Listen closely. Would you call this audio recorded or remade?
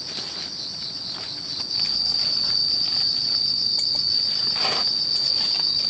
recorded